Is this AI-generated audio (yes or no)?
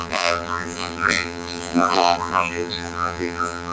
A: yes